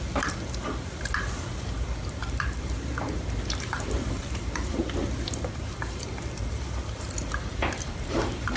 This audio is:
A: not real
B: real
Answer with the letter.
A